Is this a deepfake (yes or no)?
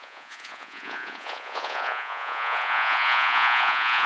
yes